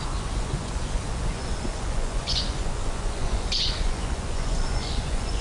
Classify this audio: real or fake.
fake